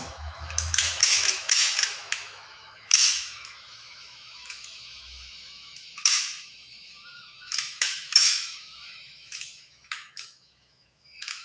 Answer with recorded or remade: remade